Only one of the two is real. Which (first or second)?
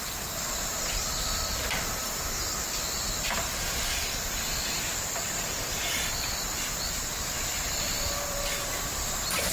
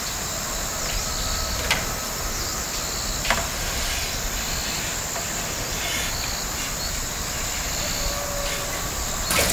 second